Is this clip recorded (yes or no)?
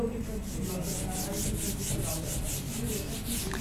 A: yes